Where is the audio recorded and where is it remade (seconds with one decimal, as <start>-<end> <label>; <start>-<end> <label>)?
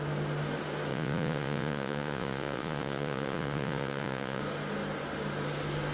0.0-0.9 recorded; 0.9-4.4 remade; 4.4-5.9 recorded